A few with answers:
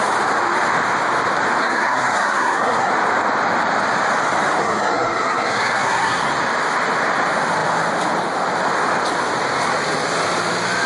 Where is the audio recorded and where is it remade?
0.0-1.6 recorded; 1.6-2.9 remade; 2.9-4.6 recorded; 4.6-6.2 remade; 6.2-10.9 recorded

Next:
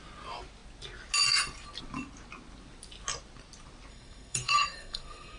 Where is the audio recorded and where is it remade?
0.0-3.9 recorded; 3.9-5.4 remade

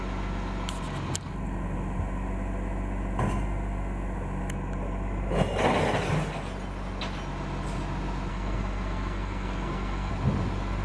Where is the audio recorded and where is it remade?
0.0-8.3 recorded; 8.3-10.1 remade; 10.1-10.8 recorded

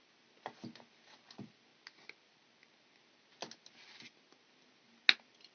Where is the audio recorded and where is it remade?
0.0-5.5 recorded

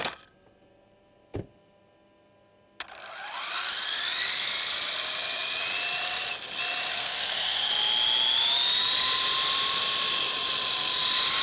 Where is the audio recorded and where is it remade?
0.0-6.9 recorded; 6.9-7.7 remade; 7.7-11.4 recorded

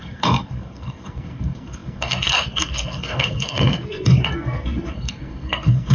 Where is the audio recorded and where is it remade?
0.0-5.9 remade

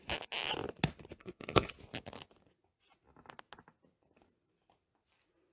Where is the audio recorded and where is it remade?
0.0-1.2 recorded; 1.2-1.7 remade; 1.7-5.5 recorded